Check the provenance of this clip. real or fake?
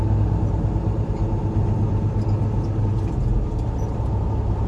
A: real